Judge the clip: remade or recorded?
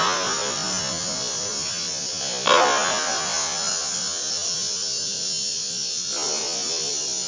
recorded